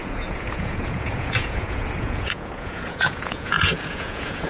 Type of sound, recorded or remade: remade